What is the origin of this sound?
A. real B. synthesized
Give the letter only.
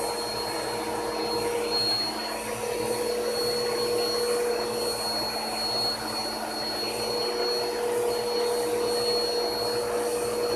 A